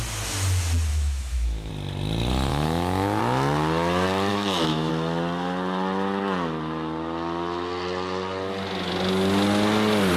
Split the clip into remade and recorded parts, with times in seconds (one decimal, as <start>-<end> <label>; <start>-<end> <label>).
0.0-0.9 recorded; 0.9-1.7 remade; 1.7-2.5 recorded; 2.5-3.2 remade; 3.2-4.3 recorded; 4.3-4.9 remade; 4.9-10.2 recorded